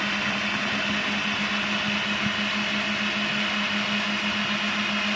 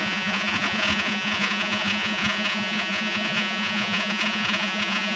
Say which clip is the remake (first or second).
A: second